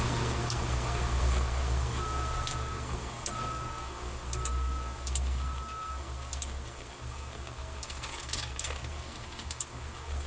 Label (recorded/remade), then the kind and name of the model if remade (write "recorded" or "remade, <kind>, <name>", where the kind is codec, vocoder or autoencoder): remade, codec, SNAC